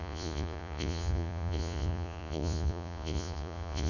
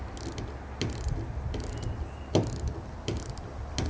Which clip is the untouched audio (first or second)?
second